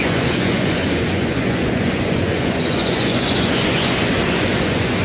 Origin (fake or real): fake